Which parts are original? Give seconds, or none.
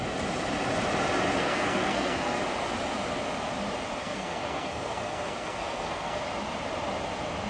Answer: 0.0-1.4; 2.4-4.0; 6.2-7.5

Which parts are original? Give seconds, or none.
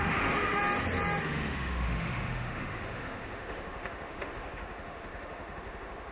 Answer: 0.6-1.2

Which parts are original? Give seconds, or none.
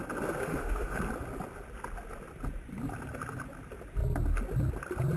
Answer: 0.0-0.4; 1.0-5.2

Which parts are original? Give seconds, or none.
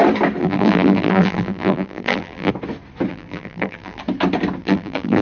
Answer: 0.0-0.4; 2.5-3.1; 4.0-4.6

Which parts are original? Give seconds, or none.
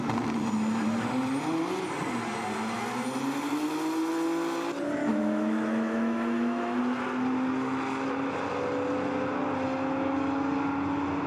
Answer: 0.0-5.0; 6.8-11.3